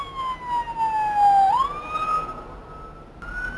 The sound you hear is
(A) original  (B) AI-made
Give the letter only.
A